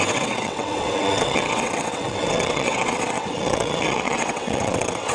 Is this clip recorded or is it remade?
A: remade